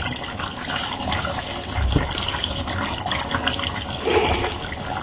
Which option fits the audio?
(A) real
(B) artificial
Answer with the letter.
A